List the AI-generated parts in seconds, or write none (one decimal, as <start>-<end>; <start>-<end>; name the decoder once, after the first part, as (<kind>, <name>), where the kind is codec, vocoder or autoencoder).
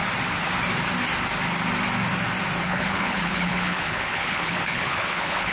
2.6-5.5 (codec, HILCodec)